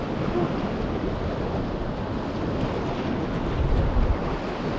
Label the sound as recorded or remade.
recorded